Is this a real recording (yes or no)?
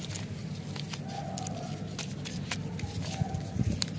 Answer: yes